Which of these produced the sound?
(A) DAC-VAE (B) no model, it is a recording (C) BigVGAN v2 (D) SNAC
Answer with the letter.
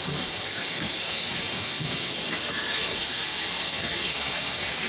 D